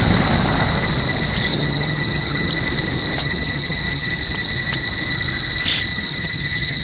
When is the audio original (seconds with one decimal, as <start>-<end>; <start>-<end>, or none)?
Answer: 0.0-1.5; 2.5-3.2; 4.1-5.9